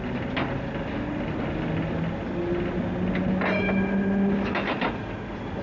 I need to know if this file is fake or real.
real